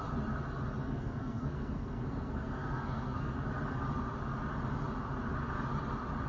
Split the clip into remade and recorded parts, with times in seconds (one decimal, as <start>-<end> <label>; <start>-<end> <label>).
0.0-0.8 recorded; 0.8-3.3 remade; 3.3-6.3 recorded